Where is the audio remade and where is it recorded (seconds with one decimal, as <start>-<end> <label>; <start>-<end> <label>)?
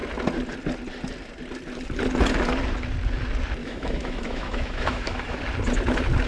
0.0-3.6 recorded; 3.6-5.4 remade; 5.4-6.3 recorded